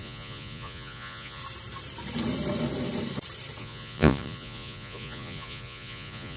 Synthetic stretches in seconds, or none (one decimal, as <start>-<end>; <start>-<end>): 0.0-1.4; 3.6-6.4